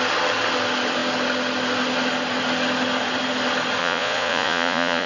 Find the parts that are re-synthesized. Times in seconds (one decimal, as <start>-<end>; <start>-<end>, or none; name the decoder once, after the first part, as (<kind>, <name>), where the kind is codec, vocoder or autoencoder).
3.8-5.1 (vocoder, Vocos)

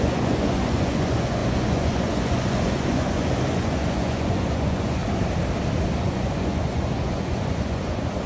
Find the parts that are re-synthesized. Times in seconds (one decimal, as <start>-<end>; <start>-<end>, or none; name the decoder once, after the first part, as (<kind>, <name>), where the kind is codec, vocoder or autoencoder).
0.0-5.0 (vocoder, Vocos); 6.0-8.3

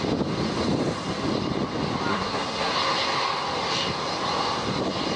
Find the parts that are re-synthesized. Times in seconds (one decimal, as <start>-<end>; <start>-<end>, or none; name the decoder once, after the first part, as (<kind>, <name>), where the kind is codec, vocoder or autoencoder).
2.1-2.7 (codec, SNAC)

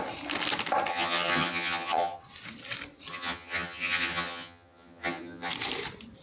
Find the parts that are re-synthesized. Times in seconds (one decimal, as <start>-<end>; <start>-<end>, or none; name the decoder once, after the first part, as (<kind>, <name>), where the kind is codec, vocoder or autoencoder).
0.9-2.2 (vocoder, HiFi-GAN); 3.1-5.5

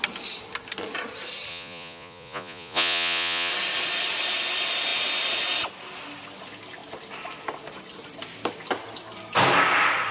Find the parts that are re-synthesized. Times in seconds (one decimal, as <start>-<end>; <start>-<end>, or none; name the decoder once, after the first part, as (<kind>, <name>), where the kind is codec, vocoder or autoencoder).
1.5-3.5 (vocoder, Vocos)

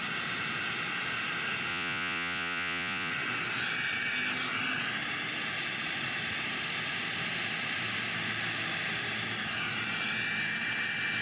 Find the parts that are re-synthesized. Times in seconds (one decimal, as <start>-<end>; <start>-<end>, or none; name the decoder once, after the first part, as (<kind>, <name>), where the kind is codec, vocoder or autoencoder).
1.7-3.1 (vocoder, Vocos)

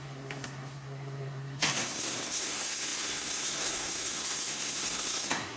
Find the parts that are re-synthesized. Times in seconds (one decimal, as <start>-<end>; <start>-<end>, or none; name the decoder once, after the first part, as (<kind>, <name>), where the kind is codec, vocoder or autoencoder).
0.0-5.6 (codec, SNAC)

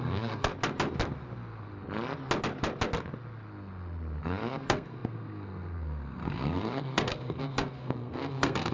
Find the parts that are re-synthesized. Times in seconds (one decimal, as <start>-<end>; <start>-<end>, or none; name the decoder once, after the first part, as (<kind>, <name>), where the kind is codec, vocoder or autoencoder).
0.0-0.5 (codec, SNAC); 4.2-8.7